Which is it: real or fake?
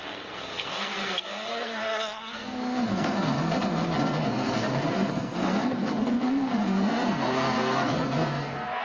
fake